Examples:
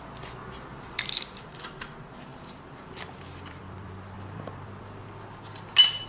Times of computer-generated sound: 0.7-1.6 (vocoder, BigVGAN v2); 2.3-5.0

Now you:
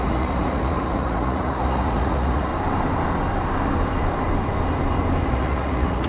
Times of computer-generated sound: 0.0-2.5 (vocoder, Vocos); 5.3-6.1